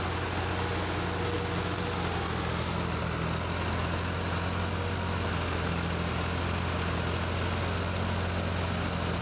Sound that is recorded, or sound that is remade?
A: recorded